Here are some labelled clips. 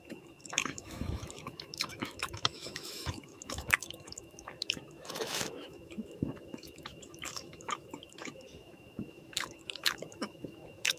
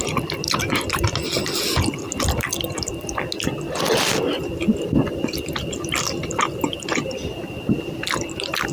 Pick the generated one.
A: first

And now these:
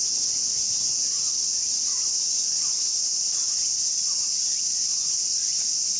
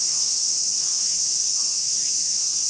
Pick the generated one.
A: second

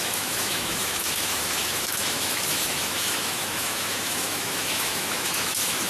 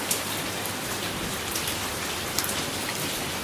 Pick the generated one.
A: first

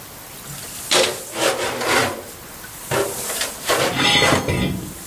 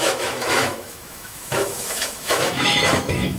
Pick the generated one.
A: second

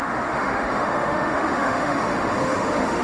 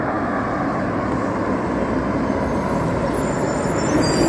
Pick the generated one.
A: first